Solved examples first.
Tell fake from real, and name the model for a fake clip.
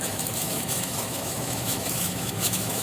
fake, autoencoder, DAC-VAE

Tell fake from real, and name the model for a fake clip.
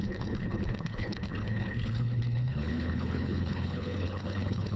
fake, codec, HILCodec